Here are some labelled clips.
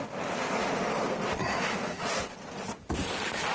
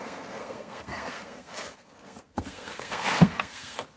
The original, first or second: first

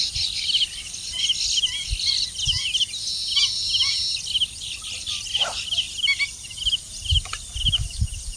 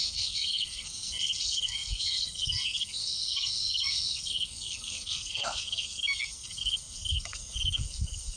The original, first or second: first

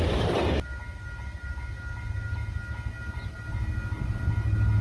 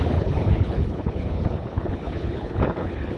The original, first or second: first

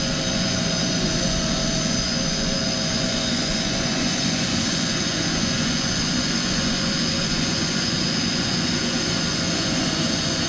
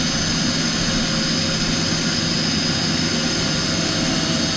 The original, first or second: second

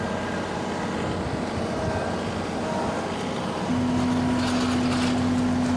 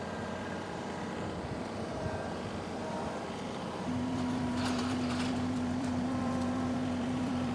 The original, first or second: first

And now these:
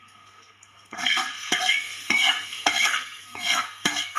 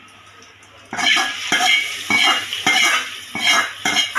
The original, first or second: second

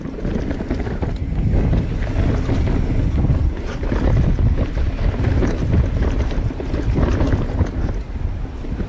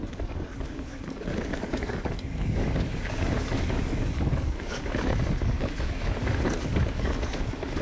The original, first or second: first